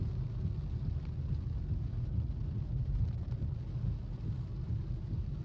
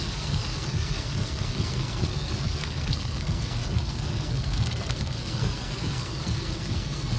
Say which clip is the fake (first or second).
second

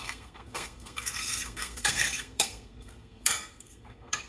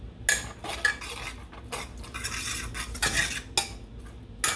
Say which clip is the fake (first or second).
first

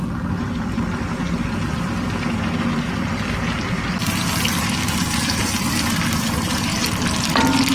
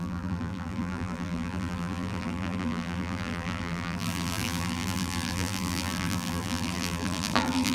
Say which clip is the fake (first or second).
second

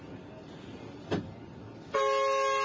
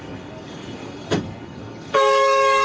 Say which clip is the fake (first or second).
second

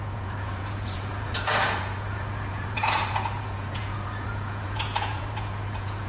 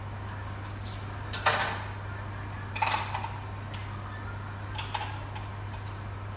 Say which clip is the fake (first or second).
first